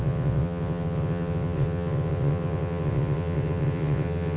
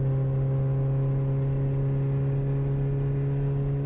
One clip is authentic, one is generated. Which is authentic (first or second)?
second